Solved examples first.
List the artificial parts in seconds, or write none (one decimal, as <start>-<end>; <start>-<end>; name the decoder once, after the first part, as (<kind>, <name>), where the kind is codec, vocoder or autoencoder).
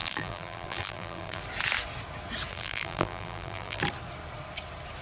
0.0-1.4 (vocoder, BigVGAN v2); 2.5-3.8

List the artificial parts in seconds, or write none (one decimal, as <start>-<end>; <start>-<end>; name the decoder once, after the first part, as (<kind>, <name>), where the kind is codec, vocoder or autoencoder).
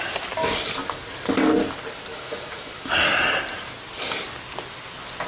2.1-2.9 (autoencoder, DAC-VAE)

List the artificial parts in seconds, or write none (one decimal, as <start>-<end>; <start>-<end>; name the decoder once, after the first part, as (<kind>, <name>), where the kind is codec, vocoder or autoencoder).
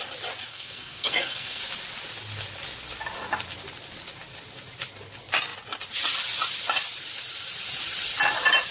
0.5-1.6 (codec, SNAC)